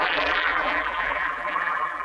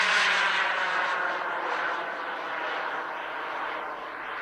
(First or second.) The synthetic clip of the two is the first